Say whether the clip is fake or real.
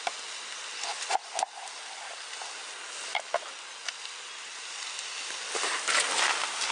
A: real